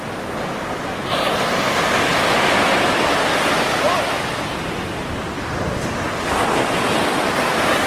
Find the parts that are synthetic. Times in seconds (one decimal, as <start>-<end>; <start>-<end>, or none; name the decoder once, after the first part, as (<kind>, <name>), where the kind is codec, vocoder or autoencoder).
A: none